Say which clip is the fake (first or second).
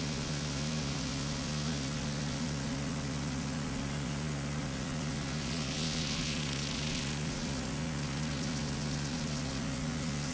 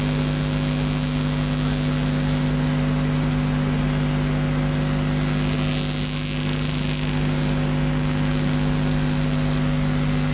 first